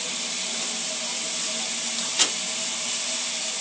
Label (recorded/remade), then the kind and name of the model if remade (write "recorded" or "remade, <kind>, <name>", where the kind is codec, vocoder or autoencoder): recorded